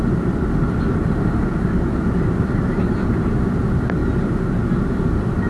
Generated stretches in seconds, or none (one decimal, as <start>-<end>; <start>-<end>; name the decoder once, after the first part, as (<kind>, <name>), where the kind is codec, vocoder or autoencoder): 0.0-4.0 (vocoder, BigVGAN v2); 5.0-5.5